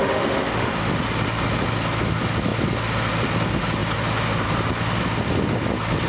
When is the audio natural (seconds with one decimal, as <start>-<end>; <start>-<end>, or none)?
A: 0.9-6.1